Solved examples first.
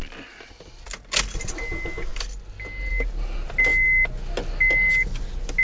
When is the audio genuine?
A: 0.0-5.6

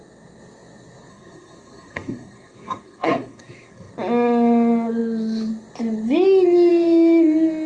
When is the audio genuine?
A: 0.0-1.1; 3.9-7.7

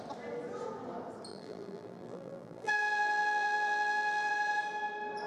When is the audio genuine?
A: 0.0-1.3; 4.3-5.3